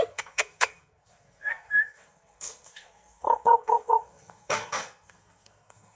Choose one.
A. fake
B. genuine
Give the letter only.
A